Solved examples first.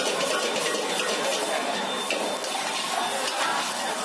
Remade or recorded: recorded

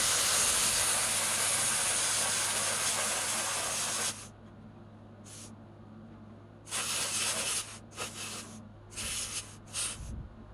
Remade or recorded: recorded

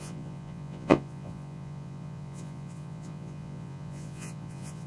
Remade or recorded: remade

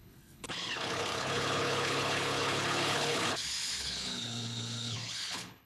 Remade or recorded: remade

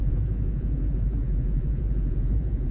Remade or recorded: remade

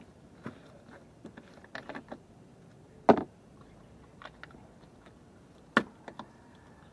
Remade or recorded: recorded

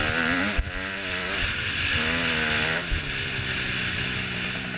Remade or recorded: recorded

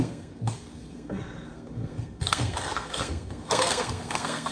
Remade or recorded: remade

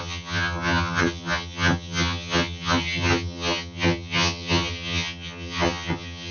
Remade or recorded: remade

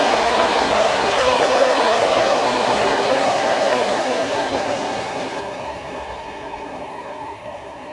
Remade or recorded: remade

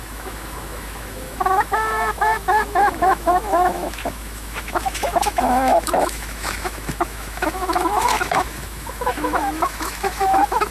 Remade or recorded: remade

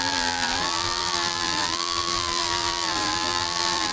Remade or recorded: remade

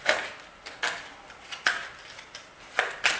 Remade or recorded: recorded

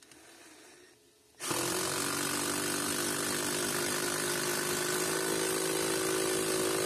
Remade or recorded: recorded